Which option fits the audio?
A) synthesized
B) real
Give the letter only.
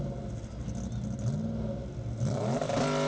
B